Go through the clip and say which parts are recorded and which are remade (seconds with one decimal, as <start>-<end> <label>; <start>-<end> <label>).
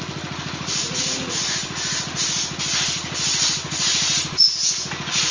0.0-0.8 recorded; 0.8-1.4 remade; 1.4-5.3 recorded